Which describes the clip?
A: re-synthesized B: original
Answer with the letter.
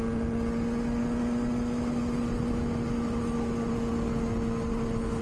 B